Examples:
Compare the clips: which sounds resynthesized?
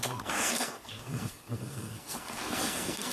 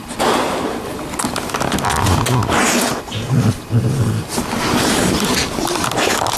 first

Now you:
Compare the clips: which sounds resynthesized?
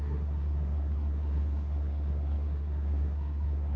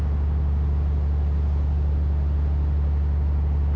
first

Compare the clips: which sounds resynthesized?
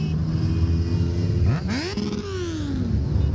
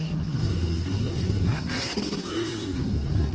second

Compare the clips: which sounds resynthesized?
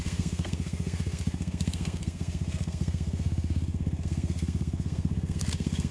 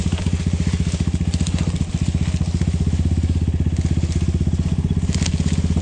first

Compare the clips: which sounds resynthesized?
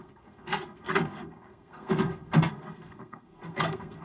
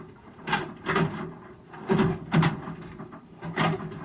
first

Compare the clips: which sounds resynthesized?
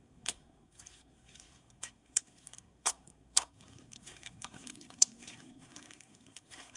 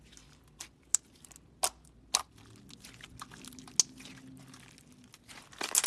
first